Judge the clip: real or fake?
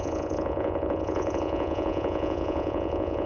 fake